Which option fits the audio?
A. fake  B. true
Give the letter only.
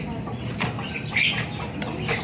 B